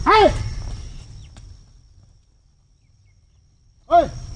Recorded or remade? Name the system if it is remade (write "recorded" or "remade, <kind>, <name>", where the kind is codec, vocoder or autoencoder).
recorded